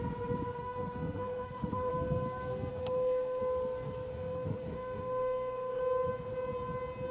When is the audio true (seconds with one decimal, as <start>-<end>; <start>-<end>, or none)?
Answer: 0.0-0.6; 1.9-2.7; 3.4-4.1; 5.8-7.1